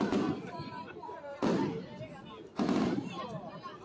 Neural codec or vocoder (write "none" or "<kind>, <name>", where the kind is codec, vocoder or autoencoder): vocoder, BigVGAN v2